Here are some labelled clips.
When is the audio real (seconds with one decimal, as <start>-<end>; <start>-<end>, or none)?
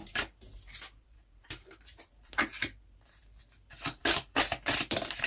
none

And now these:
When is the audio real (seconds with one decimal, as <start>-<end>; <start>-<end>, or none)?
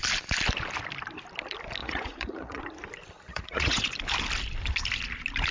0.0-1.8; 2.6-3.3; 3.9-5.5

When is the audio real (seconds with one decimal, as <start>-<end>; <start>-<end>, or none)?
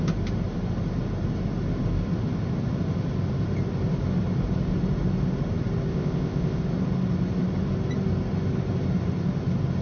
0.0-5.9; 6.6-9.8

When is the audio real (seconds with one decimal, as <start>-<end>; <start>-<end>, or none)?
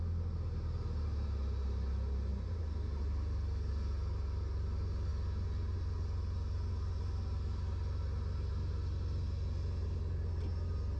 0.0-11.0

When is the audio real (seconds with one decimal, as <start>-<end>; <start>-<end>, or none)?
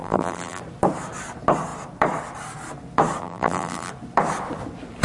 0.6-3.2; 3.9-5.0